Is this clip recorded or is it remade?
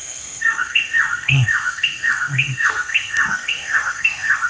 remade